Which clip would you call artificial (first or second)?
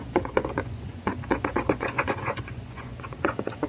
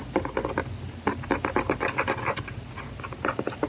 first